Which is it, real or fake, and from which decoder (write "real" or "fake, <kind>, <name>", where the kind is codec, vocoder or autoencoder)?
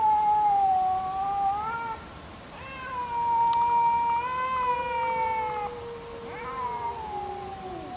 real